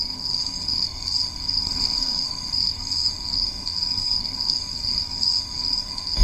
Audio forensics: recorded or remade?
remade